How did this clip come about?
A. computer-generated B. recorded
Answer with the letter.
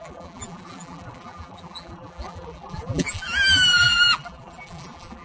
A